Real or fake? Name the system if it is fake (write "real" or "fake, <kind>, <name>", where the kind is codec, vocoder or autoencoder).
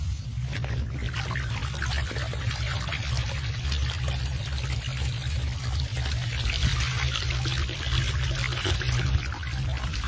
real